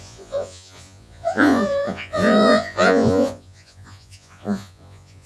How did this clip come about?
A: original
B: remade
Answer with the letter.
B